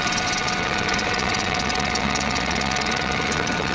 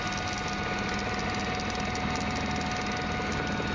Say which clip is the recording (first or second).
second